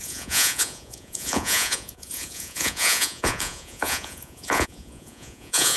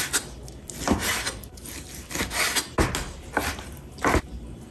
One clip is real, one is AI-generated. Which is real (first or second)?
second